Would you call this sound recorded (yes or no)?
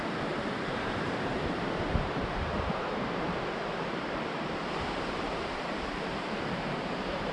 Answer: no